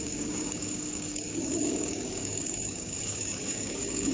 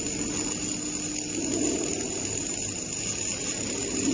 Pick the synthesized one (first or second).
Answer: first